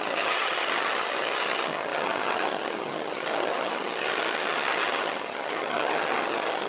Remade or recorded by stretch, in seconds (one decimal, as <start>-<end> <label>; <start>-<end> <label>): 0.0-6.7 remade